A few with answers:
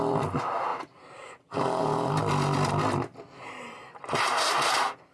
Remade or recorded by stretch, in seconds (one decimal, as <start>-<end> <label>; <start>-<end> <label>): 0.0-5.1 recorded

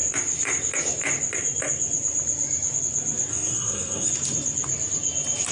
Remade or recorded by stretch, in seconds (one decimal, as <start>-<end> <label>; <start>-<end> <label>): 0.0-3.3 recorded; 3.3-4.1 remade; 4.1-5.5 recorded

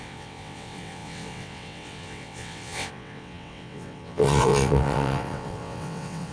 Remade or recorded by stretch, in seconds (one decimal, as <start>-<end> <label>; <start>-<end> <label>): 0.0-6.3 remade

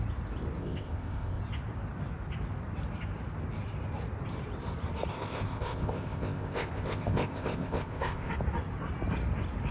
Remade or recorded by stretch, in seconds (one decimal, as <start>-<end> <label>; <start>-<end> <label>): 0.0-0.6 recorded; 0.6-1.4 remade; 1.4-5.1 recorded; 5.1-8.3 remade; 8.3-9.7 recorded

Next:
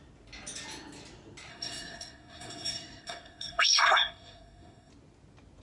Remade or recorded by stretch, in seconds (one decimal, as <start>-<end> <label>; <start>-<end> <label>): 0.0-1.5 recorded; 1.5-4.9 remade; 4.9-5.6 recorded

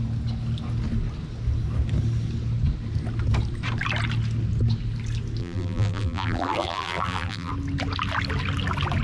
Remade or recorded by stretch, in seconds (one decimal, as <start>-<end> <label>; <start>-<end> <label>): 0.0-5.4 recorded; 5.4-7.5 remade; 7.5-9.0 recorded

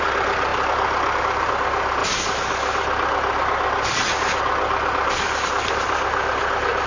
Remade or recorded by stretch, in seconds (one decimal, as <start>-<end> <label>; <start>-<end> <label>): 0.0-6.9 recorded